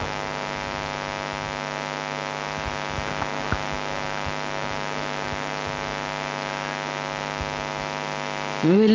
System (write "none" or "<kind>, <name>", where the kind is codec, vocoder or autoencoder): none